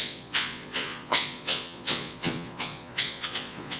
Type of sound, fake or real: fake